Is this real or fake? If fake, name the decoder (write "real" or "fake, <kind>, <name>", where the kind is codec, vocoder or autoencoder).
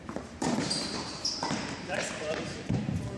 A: fake, vocoder, BigVGAN v2